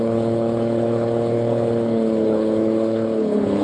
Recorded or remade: remade